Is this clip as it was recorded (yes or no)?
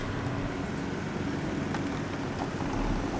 yes